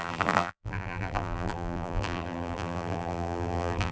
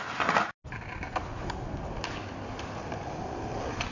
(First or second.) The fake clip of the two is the first